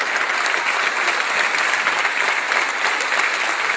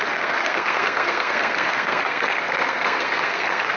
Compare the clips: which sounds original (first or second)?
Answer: first